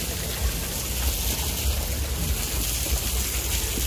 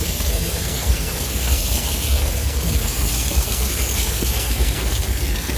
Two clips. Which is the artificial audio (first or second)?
second